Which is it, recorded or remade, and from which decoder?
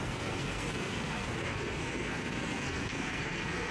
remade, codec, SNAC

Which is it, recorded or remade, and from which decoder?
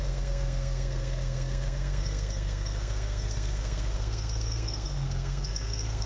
remade, codec, SNAC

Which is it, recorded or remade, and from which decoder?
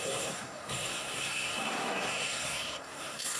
remade, codec, SNAC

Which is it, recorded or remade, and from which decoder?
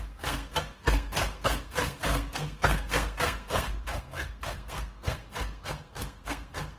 remade, codec, SNAC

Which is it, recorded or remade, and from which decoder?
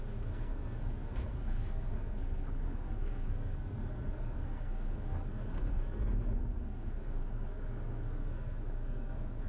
remade, codec, SNAC